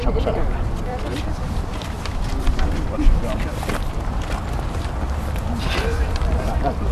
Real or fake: fake